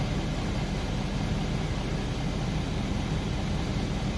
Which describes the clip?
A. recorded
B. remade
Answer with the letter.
A